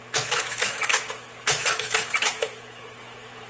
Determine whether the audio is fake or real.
fake